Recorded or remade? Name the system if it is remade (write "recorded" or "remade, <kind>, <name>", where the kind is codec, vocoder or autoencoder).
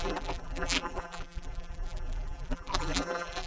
remade, vocoder, BigVGAN v2